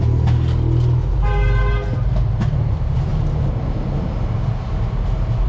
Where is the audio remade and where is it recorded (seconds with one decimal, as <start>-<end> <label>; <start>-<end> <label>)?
0.0-5.5 recorded